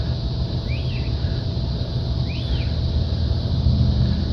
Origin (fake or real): real